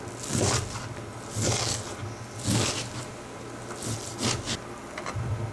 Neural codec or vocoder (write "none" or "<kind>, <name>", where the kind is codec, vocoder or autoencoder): none